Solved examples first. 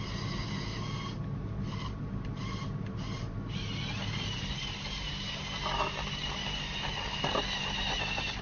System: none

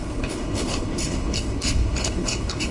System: codec, HILCodec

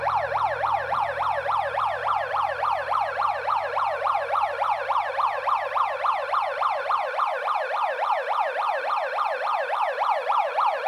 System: vocoder, BigVGAN v2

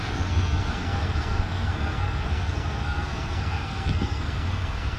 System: codec, SNAC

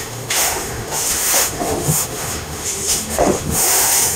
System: autoencoder, DAC-VAE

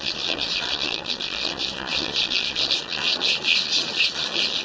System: vocoder, Vocos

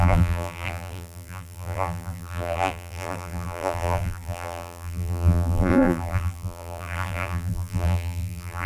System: vocoder, BigVGAN v2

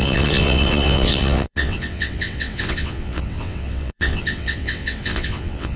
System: vocoder, WaveNeXt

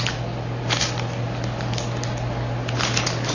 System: none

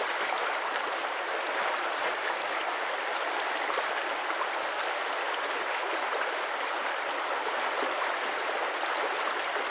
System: none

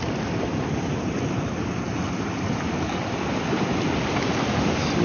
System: none